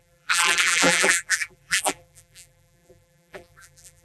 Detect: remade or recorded remade